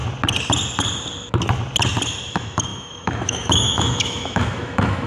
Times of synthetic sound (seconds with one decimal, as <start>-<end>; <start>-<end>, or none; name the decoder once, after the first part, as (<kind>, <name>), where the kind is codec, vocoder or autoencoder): 2.3-5.1 (autoencoder, DAC-VAE)